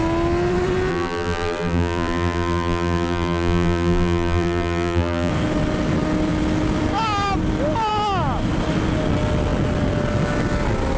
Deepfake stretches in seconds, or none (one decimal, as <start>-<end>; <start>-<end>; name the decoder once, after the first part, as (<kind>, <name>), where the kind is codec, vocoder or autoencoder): 0.9-5.3 (vocoder, BigVGAN v2)